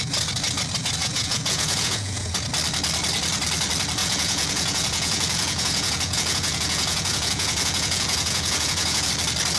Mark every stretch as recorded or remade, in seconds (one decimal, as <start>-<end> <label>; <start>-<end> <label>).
0.0-1.0 recorded; 1.0-2.3 remade; 2.3-4.0 recorded; 4.0-9.1 remade; 9.1-9.6 recorded